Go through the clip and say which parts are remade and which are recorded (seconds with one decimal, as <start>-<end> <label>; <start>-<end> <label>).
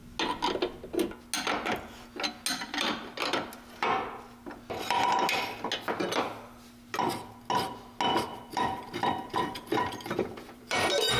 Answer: 0.0-8.3 recorded; 8.3-11.2 remade